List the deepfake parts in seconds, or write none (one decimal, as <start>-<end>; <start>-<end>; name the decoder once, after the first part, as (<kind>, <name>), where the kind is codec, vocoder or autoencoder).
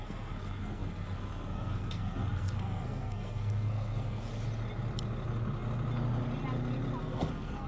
0.0-4.3 (codec, SNAC); 7.0-7.7